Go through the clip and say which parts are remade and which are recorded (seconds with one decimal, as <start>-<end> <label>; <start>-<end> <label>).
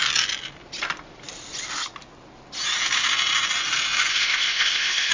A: 0.0-4.1 recorded; 4.1-5.1 remade